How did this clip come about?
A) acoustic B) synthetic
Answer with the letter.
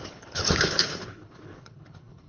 B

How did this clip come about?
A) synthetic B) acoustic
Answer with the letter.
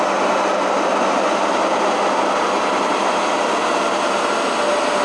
B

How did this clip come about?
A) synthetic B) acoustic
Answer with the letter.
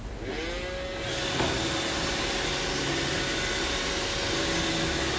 B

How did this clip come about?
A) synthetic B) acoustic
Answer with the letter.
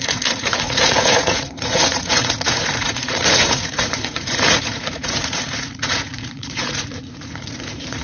A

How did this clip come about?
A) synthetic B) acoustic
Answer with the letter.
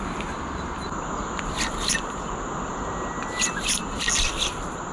B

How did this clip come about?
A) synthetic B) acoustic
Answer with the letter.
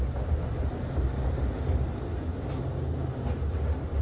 B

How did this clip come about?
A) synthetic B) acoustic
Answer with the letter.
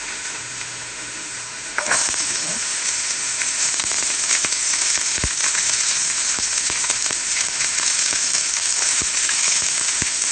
A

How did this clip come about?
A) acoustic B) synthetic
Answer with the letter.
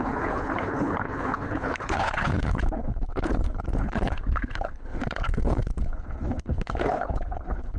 B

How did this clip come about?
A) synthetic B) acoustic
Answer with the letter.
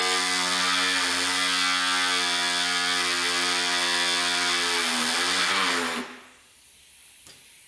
B